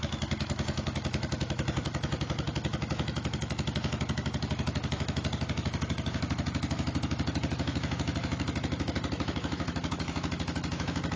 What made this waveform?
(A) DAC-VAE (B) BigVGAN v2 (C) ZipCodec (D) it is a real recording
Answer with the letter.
A